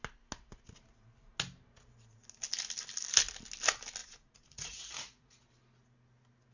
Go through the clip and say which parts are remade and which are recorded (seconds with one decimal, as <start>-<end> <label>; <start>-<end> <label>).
0.0-4.0 recorded; 4.0-5.4 remade; 5.4-6.5 recorded